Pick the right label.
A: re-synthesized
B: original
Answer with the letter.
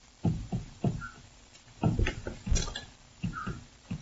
A